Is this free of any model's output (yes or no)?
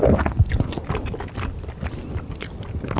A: yes